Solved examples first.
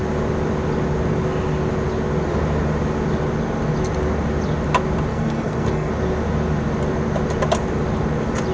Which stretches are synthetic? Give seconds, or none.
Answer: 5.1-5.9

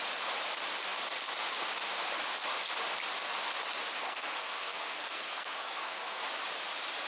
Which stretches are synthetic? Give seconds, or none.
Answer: 4.0-6.2

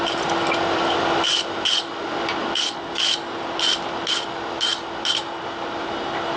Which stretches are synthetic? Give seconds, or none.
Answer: none